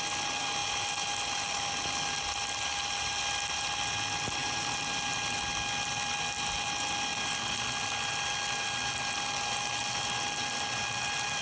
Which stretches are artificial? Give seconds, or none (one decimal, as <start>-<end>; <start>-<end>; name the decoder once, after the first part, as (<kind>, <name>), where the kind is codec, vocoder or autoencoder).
none